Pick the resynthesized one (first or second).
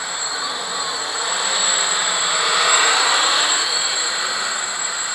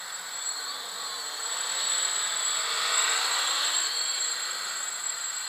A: first